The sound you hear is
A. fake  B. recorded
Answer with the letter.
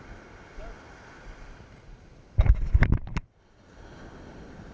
B